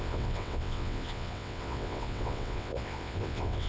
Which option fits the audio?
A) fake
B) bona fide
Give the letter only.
A